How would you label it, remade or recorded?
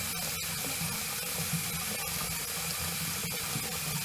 recorded